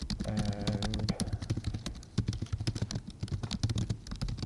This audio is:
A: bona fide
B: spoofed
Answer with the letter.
A